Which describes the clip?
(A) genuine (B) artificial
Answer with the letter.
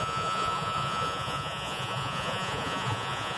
B